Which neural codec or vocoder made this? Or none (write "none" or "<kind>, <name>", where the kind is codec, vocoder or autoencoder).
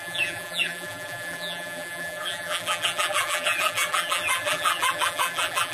vocoder, BigVGAN v2